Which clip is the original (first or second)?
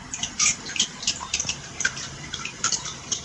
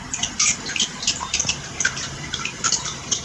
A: second